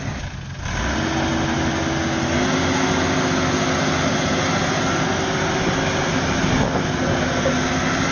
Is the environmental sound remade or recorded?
recorded